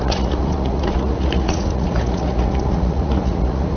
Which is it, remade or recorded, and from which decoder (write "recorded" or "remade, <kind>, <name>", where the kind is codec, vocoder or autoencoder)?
remade, vocoder, Vocos